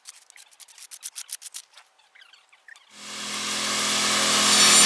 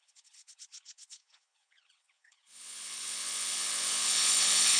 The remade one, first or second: second